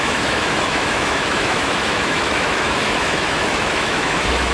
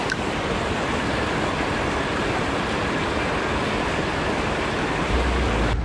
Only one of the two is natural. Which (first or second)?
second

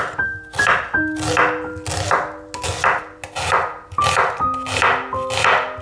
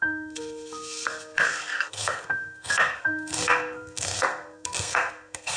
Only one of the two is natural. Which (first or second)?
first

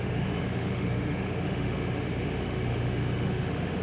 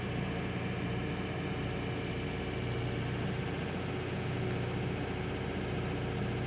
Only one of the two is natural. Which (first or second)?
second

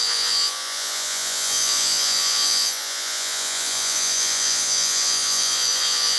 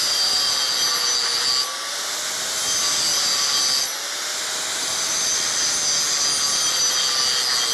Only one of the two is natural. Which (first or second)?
second